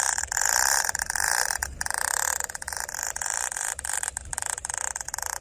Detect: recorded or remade remade